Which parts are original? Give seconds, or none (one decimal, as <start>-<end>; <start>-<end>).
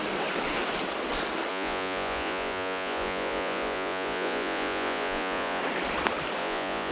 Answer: 0.0-1.5; 5.6-6.4